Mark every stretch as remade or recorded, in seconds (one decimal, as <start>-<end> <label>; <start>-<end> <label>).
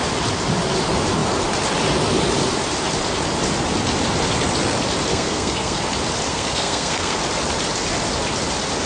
0.0-5.1 recorded; 5.1-5.8 remade; 5.8-6.3 recorded; 6.3-7.2 remade; 7.2-8.9 recorded